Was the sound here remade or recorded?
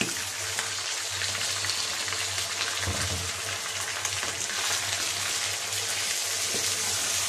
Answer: recorded